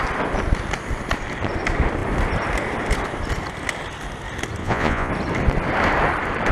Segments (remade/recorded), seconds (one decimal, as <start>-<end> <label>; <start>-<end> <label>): 0.0-4.6 recorded; 4.6-5.1 remade; 5.1-6.5 recorded